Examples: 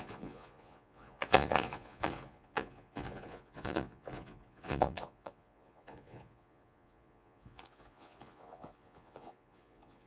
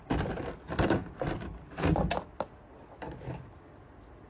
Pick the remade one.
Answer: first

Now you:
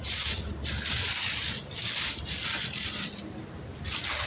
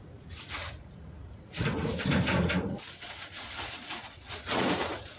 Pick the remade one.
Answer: second